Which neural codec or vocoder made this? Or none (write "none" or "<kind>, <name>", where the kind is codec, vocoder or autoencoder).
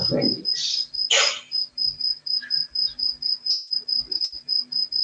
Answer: none